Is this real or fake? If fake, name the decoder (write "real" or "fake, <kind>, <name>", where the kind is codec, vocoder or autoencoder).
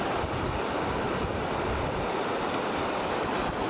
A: real